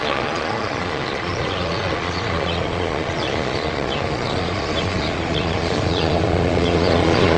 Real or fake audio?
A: fake